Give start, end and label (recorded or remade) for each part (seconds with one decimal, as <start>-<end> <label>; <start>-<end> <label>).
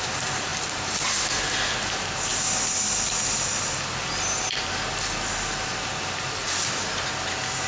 0.0-0.5 recorded; 0.5-1.4 remade; 1.4-7.7 recorded